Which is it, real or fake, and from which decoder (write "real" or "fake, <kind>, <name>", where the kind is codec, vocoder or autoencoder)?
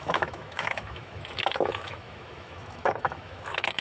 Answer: fake, autoencoder, DAC-VAE